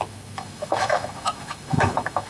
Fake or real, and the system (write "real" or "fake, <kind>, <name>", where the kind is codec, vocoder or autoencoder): fake, autoencoder, DAC-VAE